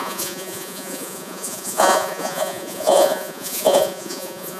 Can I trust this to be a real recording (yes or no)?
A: no